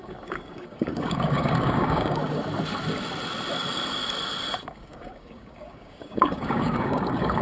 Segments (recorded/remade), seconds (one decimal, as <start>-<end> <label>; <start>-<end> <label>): 0.0-2.2 remade; 2.2-4.7 recorded; 4.7-7.4 remade